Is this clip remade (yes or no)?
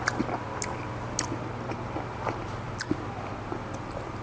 no